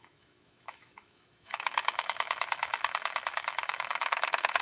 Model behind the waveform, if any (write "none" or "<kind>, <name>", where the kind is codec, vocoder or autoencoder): autoencoder, DAC-VAE